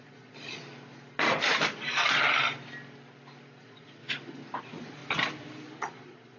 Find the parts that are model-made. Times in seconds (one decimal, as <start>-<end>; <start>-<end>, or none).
0.0-0.6; 3.6-4.0; 4.6-5.0; 5.8-6.4